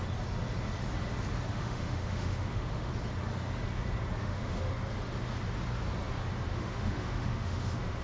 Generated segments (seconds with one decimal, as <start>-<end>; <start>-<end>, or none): 1.5-2.9; 4.2-4.7; 6.5-8.0